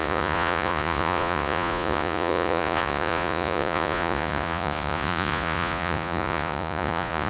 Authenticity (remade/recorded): remade